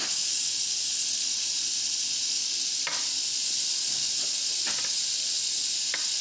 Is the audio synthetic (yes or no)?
no